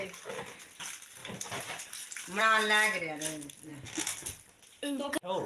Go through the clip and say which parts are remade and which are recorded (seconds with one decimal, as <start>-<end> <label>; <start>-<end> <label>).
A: 0.0-5.5 recorded